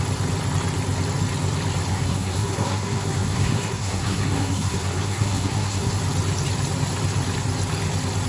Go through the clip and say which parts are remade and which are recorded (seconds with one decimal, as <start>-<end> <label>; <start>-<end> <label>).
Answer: 0.0-1.9 recorded; 1.9-5.9 remade; 5.9-8.3 recorded